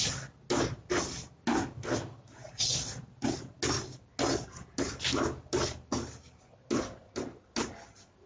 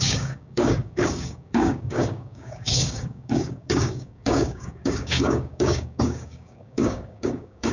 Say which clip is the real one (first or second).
first